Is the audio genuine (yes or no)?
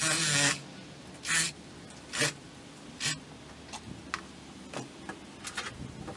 yes